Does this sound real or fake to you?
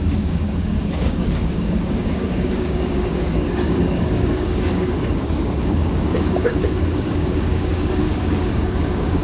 fake